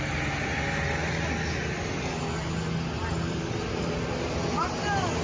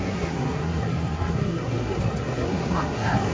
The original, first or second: first